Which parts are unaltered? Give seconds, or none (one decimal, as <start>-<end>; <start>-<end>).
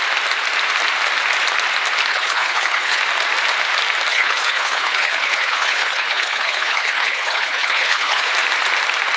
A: 0.0-2.1; 3.0-4.1; 8.3-9.2